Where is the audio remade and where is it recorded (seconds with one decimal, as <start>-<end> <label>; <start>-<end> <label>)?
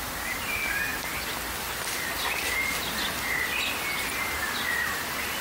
0.0-5.4 recorded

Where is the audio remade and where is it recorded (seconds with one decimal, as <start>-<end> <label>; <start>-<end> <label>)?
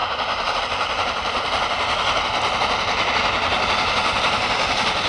0.0-0.6 remade; 0.6-5.1 recorded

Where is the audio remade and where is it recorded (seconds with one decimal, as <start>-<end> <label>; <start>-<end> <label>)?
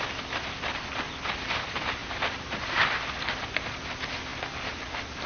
0.0-4.3 remade; 4.3-5.3 recorded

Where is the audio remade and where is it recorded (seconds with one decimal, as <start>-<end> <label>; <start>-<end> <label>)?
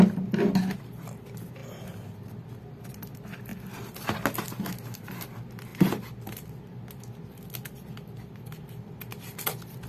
0.0-9.9 recorded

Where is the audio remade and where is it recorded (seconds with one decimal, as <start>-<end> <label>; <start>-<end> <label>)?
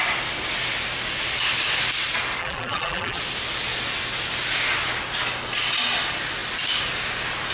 0.0-2.4 recorded; 2.4-3.2 remade; 3.2-7.5 recorded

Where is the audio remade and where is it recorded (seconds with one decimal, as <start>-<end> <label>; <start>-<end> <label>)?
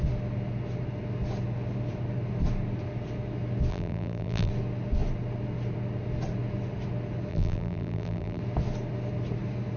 0.0-3.7 recorded; 3.7-4.5 remade; 4.5-7.3 recorded; 7.3-8.4 remade; 8.4-9.8 recorded